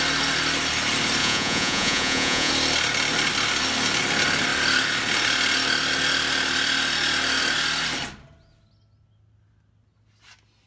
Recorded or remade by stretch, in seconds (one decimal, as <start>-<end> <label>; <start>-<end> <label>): 0.0-1.2 recorded; 1.2-2.5 remade; 2.5-10.7 recorded